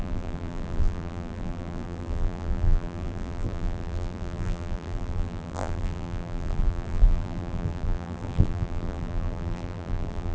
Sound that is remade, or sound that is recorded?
remade